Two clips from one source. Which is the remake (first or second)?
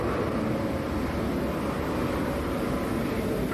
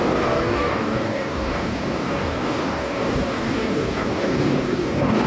second